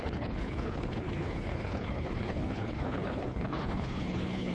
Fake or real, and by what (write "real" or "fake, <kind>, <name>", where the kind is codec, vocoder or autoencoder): fake, codec, HILCodec